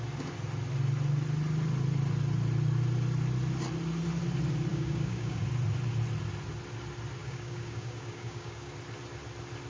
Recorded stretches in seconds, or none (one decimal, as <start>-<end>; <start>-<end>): 0.0-4.7; 5.4-7.2; 8.7-9.7